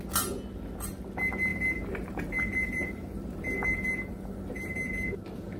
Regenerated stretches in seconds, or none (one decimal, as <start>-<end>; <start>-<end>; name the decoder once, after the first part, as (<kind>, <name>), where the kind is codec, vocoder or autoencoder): 1.5-4.9 (vocoder, BigVGAN v2)

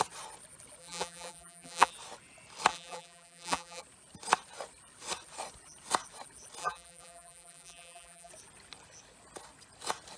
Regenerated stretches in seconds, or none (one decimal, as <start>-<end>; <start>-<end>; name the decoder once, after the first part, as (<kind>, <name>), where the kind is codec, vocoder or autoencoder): 0.8-1.9 (vocoder, BigVGAN v2); 2.7-3.8; 6.6-8.3

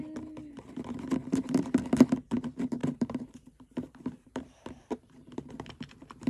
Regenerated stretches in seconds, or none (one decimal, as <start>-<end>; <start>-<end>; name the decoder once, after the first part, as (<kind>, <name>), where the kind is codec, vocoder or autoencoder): 1.2-1.9 (vocoder, BigVGAN v2); 2.8-5.5